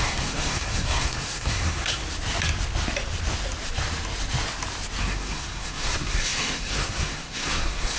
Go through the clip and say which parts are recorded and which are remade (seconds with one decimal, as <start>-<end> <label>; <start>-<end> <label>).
0.0-2.0 remade; 2.0-5.0 recorded; 5.0-8.0 remade